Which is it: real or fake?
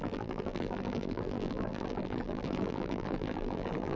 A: fake